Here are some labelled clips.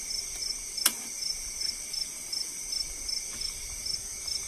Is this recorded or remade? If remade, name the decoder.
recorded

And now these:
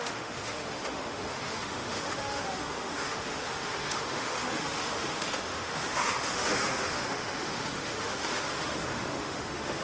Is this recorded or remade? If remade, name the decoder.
remade, autoencoder, DAC-VAE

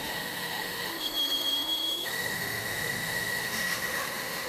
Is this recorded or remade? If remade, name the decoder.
remade, autoencoder, DAC-VAE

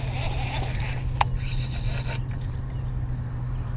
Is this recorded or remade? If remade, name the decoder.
recorded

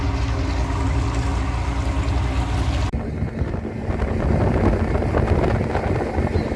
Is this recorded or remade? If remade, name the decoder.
recorded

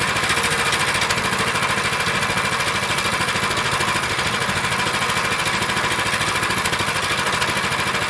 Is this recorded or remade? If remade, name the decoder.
recorded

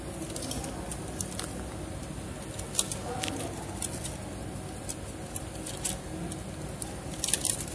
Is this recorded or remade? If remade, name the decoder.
recorded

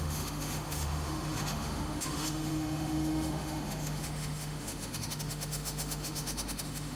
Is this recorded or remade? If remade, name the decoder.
remade, autoencoder, DAC-VAE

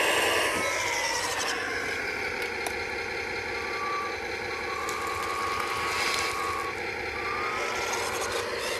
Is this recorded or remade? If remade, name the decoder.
recorded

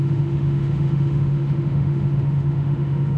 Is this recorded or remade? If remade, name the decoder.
remade, autoencoder, DAC-VAE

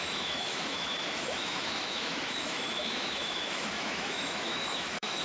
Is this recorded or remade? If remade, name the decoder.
remade, autoencoder, DAC-VAE